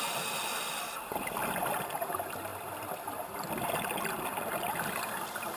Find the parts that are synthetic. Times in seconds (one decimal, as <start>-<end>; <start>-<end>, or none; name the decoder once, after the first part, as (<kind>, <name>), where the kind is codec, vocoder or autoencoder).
0.0-1.4 (vocoder, BigVGAN v2); 2.1-5.6